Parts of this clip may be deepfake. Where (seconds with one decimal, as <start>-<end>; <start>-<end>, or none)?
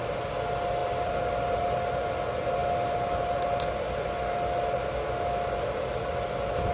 none